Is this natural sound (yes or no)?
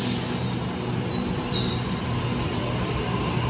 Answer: yes